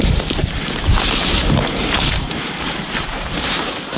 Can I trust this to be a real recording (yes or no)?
no